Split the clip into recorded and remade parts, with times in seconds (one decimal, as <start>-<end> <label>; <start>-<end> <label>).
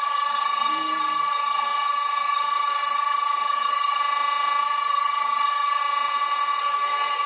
0.0-4.0 remade; 4.0-4.6 recorded; 4.6-5.8 remade; 5.8-6.6 recorded; 6.6-7.3 remade